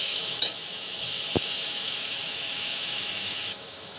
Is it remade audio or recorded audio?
remade